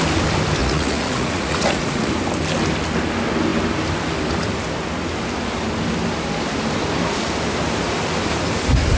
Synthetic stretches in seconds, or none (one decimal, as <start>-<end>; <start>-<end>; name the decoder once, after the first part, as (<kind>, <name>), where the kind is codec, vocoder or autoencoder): 0.6-2.1 (vocoder, Vocos)